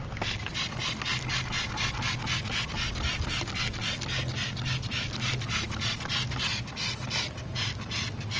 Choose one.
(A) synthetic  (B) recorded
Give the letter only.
B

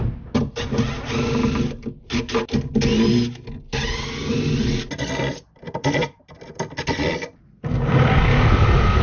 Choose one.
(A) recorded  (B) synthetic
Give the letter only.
A